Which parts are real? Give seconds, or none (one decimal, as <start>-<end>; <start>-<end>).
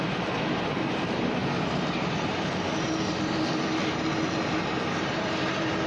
0.0-5.9